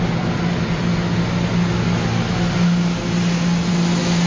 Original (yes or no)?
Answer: yes